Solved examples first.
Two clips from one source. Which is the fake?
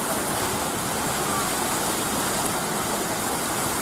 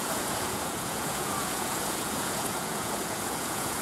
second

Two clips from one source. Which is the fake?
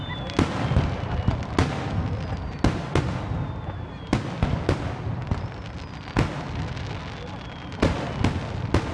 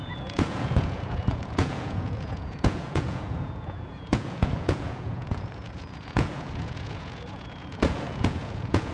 second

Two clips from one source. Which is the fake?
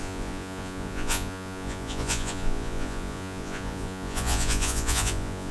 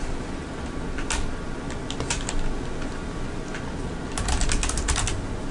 first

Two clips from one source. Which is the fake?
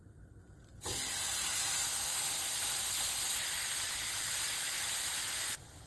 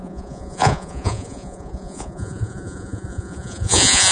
second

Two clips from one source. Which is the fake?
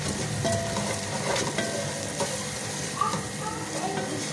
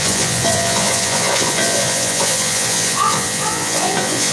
second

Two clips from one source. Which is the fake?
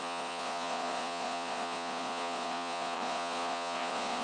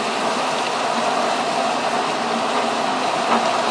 first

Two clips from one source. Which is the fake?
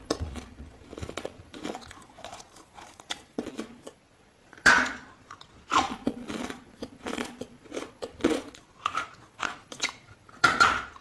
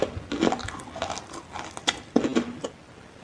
first